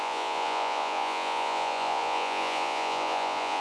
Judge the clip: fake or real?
fake